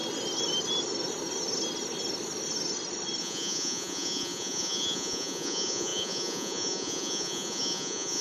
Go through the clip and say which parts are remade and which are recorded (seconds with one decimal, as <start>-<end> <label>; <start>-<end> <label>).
0.0-3.2 recorded; 3.2-8.2 remade